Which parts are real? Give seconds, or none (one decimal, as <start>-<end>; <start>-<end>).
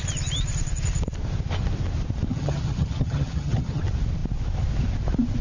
0.0-2.3; 3.8-5.4